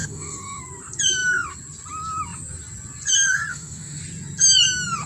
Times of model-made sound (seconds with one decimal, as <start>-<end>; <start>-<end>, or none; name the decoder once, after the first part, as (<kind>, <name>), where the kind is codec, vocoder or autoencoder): 0.0-0.6 (autoencoder, DAC-VAE); 3.5-4.0

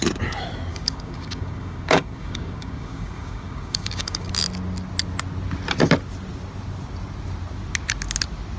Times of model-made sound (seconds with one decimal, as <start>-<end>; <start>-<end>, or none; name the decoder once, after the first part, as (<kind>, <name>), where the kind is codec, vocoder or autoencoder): 0.7-4.3 (codec, DAC)

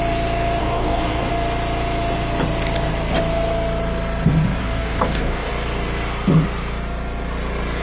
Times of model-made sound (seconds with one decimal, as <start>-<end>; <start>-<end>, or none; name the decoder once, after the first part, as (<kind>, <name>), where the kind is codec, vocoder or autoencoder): 0.6-1.3 (codec, DAC); 4.6-5.5